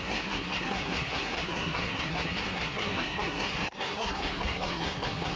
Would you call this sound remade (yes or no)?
yes